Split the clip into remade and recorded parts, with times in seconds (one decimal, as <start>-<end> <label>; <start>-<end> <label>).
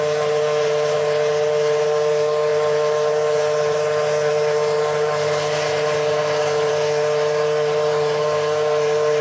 0.0-9.2 recorded